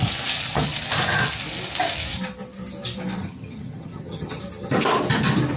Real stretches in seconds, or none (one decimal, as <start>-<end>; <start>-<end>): 0.0-3.2; 4.4-5.6